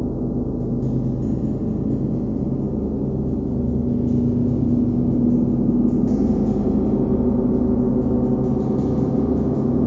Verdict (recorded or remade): recorded